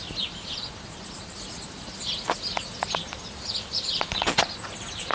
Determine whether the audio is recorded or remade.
recorded